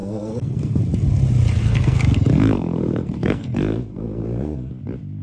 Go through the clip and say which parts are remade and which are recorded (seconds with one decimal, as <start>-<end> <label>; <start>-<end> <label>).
0.0-0.8 remade; 0.8-1.6 recorded; 1.6-4.7 remade; 4.7-5.2 recorded